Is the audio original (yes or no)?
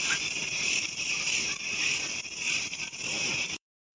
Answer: no